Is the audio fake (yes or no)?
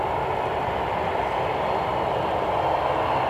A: no